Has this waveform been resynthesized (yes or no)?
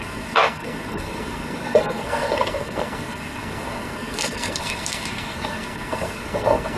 yes